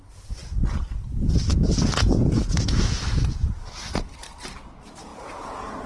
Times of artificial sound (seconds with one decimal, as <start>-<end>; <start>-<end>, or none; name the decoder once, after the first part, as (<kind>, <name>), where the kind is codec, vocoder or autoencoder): 1.5-3.0 (vocoder, Vocos); 5.1-5.9